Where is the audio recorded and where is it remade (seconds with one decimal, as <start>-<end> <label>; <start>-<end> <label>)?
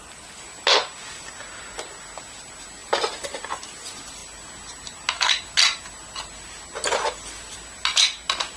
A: 0.0-8.6 recorded